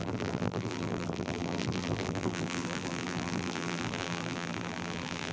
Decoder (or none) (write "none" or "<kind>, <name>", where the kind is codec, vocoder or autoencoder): vocoder, BigVGAN v2